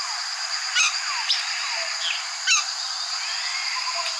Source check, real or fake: real